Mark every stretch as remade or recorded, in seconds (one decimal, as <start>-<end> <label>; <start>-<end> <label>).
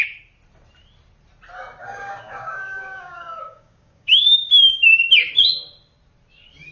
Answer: 0.0-1.8 recorded; 1.8-4.9 remade; 4.9-6.7 recorded